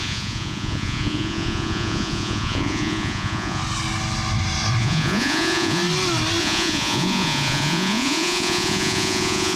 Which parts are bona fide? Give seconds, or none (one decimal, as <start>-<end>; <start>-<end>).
3.6-4.8; 5.8-6.4